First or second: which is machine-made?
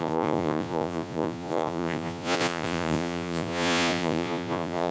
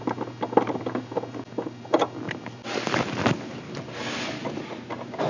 first